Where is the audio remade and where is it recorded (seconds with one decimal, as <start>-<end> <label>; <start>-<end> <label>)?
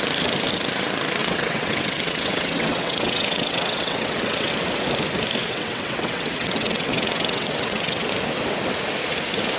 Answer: 0.0-1.2 recorded; 1.2-4.5 remade; 4.5-5.4 recorded; 5.4-8.1 remade; 8.1-9.6 recorded